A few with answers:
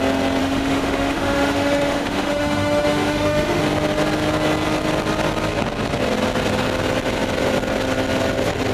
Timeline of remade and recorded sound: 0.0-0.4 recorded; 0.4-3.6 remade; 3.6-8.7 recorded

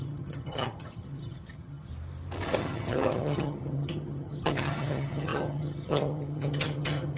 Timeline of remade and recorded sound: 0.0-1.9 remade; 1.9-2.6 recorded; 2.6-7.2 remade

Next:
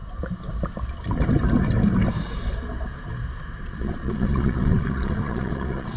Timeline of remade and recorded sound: 0.0-3.6 recorded; 3.6-6.0 remade

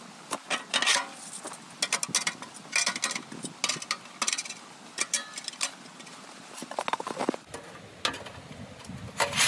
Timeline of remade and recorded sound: 0.0-9.5 recorded

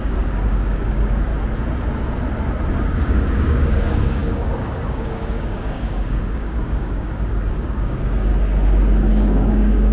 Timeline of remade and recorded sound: 0.0-1.3 remade; 1.3-2.7 recorded; 2.7-8.3 remade; 8.3-9.1 recorded; 9.1-9.9 remade

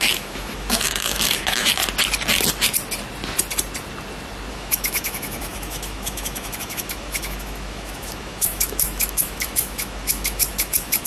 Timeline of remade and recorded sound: 0.0-1.8 remade; 1.8-4.5 recorded; 4.5-11.1 remade

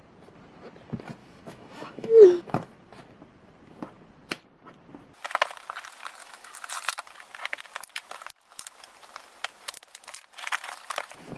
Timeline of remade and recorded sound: 0.0-1.2 recorded; 1.2-2.7 remade; 2.7-6.2 recorded; 6.2-6.7 remade; 6.7-11.4 recorded